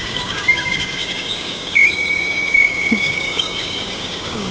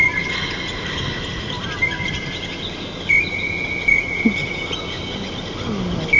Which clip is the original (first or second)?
second